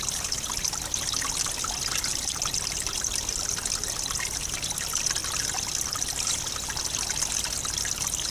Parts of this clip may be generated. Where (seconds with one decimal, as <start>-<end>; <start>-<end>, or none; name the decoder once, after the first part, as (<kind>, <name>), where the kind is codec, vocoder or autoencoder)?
none